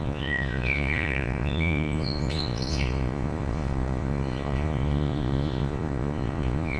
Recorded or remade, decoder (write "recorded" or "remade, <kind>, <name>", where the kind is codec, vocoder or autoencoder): remade, vocoder, Vocos